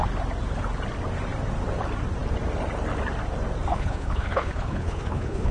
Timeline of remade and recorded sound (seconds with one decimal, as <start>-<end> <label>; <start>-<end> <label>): 0.0-3.7 recorded; 3.7-5.5 remade